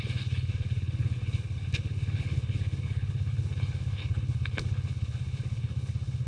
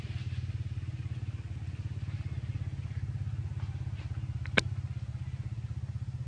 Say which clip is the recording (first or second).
second